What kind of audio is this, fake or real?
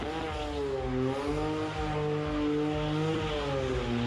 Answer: real